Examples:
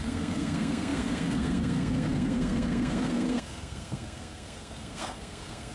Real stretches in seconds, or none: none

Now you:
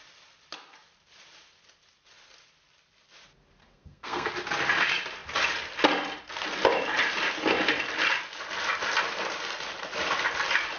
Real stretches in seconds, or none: 0.0-3.6; 4.3-10.8

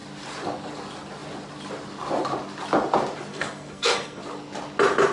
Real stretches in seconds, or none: 0.0-3.3; 4.2-5.1

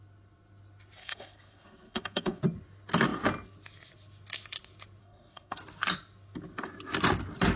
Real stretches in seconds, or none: 0.0-1.0; 2.4-5.0; 5.6-7.6

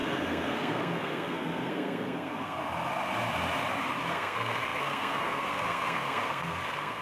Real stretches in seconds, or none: 2.6-4.1